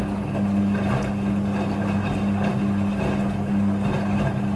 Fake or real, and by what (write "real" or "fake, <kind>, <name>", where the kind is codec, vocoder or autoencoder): real